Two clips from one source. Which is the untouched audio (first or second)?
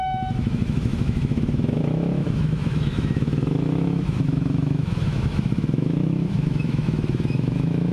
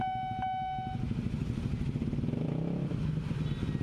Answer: second